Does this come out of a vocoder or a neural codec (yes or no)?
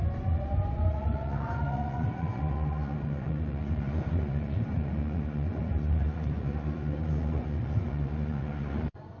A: yes